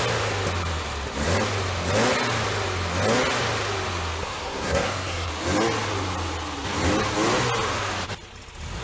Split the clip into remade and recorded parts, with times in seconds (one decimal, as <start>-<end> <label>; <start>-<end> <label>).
0.0-4.2 recorded; 4.2-5.3 remade; 5.3-8.8 recorded